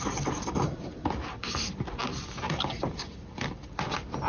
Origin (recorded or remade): recorded